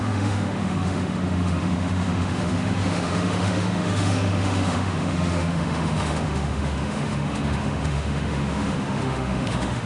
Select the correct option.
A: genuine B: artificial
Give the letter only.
B